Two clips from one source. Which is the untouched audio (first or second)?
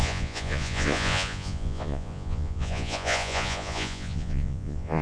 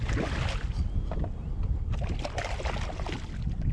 second